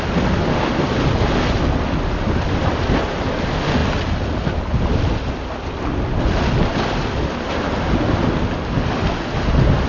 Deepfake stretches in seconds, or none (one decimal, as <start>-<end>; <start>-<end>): none